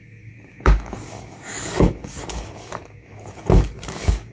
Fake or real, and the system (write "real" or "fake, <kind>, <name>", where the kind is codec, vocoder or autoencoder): fake, codec, DAC